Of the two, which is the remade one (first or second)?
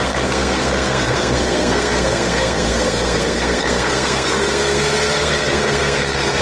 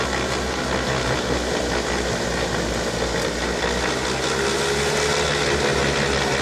first